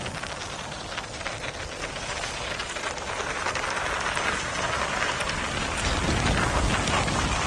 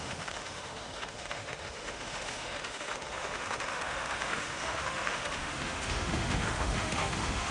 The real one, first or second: first